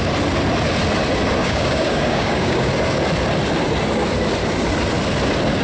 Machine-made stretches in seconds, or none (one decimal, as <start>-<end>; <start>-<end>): 1.4-2.7